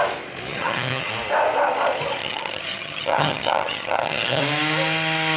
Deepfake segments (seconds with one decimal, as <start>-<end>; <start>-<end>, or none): 0.5-1.1; 2.2-4.4